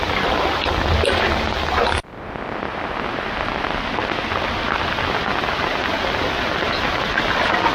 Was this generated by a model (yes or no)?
no